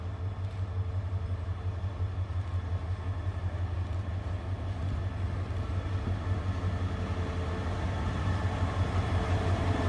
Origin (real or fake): real